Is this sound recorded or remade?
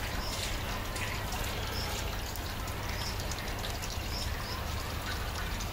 recorded